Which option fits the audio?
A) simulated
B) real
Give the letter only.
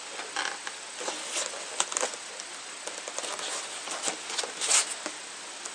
B